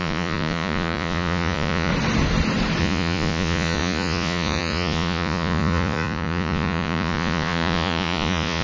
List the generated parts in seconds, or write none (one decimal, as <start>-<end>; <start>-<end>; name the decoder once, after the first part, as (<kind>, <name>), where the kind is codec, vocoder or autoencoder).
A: 0.0-1.9 (vocoder, Vocos); 2.8-8.6